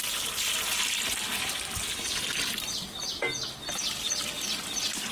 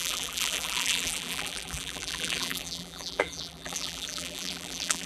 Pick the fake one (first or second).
second